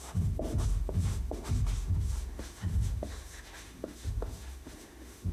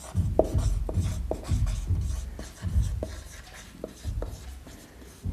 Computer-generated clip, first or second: first